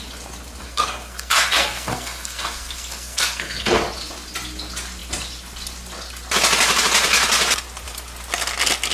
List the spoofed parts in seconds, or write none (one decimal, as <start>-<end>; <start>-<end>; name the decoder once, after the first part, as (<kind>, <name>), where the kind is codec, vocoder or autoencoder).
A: 0.6-3.8 (codec, SNAC)